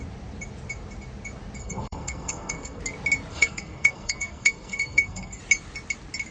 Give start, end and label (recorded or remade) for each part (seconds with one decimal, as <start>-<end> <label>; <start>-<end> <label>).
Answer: 0.0-1.6 recorded; 1.6-2.8 remade; 2.8-3.3 recorded; 3.3-5.4 remade; 5.4-6.3 recorded